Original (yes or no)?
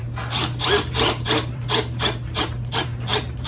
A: no